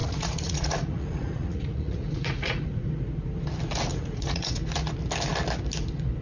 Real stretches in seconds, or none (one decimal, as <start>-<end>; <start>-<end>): 2.9-3.9; 4.6-6.2

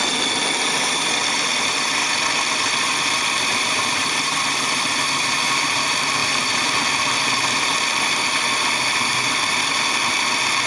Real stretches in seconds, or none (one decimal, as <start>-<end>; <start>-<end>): 0.0-2.0; 5.3-6.2; 8.3-10.7